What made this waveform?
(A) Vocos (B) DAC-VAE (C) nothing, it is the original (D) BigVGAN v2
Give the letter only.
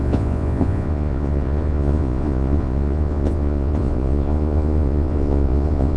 A